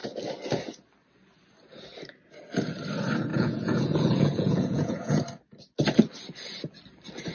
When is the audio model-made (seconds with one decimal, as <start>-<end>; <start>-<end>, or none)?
3.3-5.2